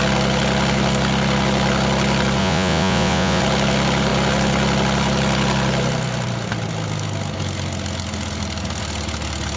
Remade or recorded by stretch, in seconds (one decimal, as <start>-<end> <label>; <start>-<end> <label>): 0.0-2.4 recorded; 2.4-3.4 remade; 3.4-9.6 recorded